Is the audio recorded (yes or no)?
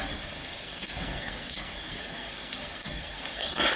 no